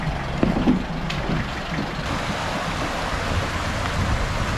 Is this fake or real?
real